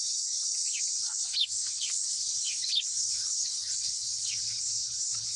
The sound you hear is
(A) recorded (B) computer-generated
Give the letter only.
B